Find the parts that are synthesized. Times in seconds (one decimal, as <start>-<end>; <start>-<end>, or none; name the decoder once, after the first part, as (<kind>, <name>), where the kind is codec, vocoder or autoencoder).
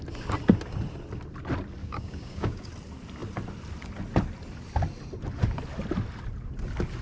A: 1.8-2.7 (codec, DAC)